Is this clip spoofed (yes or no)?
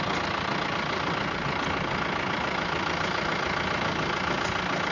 no